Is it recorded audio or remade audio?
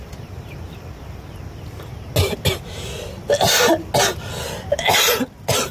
recorded